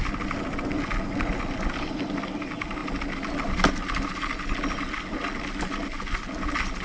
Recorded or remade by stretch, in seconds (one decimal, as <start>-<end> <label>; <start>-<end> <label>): 0.0-6.8 recorded